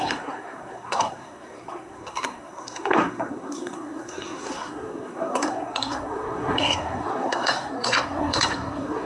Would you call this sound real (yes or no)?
no